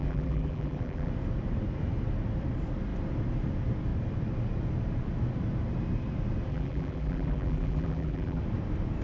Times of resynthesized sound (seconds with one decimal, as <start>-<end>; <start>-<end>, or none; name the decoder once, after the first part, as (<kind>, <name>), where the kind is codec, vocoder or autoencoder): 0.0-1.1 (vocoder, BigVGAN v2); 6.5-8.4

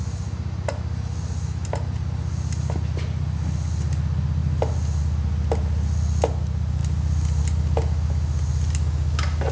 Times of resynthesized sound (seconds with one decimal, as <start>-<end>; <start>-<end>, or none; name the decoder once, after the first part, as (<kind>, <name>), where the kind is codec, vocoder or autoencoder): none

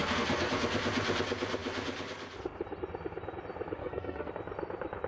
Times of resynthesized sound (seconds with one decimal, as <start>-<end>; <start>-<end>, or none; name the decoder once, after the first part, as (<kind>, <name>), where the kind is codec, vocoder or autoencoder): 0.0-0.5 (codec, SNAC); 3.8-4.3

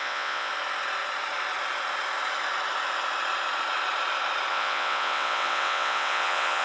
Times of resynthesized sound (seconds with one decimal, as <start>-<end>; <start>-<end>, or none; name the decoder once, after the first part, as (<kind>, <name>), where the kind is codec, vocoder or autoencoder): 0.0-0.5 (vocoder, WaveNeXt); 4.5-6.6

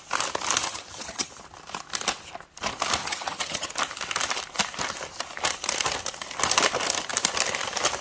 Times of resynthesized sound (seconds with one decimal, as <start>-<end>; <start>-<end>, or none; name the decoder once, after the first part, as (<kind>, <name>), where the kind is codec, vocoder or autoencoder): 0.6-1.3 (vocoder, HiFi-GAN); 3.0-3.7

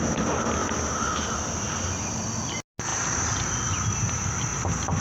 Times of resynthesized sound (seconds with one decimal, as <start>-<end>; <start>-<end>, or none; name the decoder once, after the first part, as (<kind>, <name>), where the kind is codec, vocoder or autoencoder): 0.6-1.2 (vocoder, BigVGAN v2); 4.5-5.0

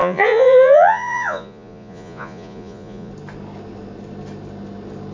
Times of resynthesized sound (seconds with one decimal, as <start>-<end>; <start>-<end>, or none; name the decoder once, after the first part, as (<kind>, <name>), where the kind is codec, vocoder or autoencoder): 0.0-3.1 (vocoder, Vocos)